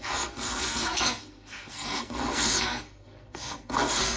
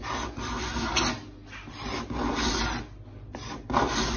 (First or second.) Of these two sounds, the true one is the second